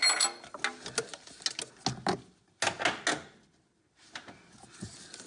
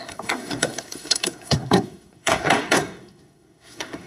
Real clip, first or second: first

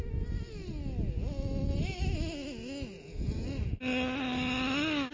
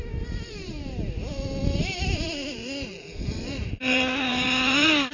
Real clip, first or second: first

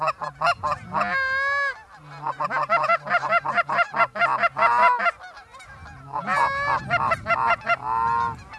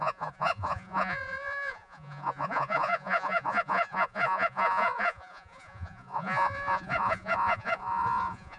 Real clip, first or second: first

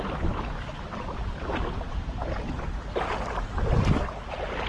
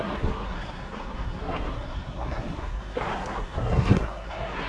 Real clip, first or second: first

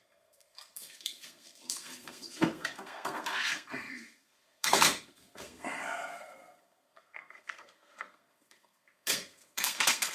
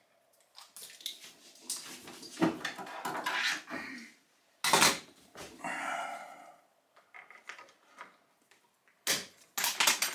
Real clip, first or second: second